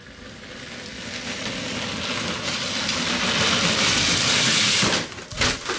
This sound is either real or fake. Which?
real